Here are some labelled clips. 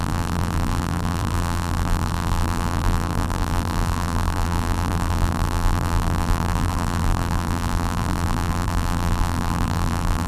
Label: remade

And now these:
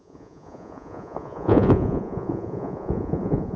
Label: remade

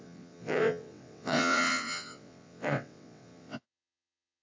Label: remade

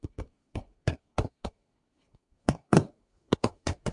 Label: remade